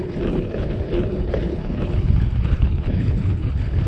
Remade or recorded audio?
remade